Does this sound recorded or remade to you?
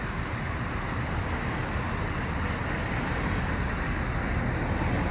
recorded